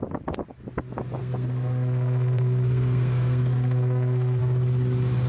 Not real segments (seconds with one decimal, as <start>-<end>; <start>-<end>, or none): 1.2-4.4